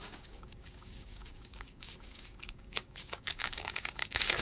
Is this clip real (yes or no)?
no